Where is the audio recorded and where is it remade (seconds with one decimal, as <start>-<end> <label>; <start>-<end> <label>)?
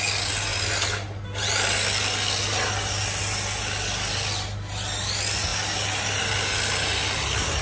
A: 0.0-7.6 recorded